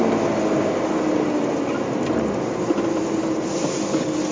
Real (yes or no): yes